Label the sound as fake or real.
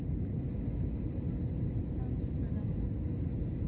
real